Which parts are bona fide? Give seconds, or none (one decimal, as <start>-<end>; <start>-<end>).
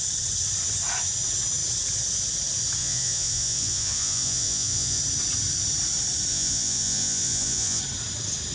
0.0-2.8; 5.0-6.3; 7.8-8.5